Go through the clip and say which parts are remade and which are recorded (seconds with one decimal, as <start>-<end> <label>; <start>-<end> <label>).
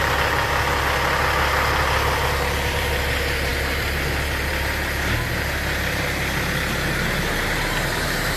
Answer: 0.0-8.4 recorded